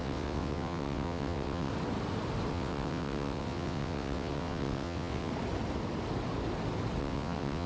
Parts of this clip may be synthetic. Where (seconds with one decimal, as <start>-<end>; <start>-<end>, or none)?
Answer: 0.0-1.7; 2.5-5.3; 7.0-7.7